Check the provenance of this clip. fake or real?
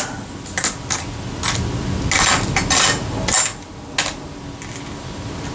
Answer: real